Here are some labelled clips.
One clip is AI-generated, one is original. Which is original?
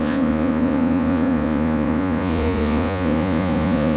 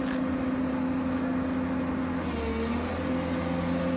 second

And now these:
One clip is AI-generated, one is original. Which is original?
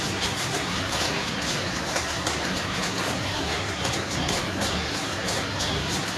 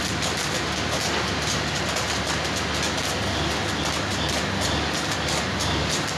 second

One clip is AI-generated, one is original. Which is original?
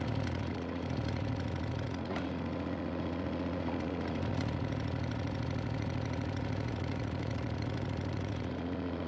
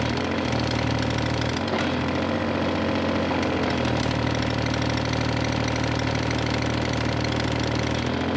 second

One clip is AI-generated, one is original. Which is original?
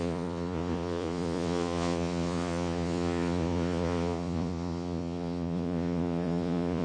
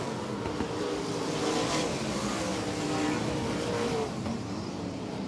second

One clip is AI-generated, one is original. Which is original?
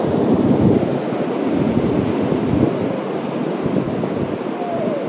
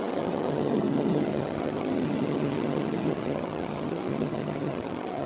first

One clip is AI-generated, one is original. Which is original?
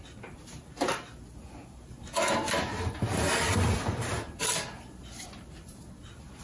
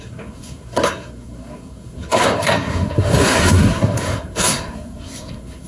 first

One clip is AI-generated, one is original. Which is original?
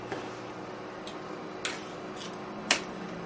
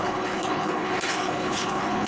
first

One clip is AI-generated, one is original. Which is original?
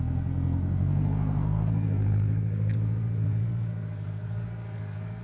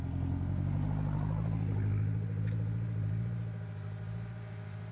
second